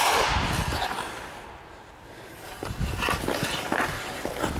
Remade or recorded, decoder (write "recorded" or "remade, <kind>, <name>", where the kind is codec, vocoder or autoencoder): recorded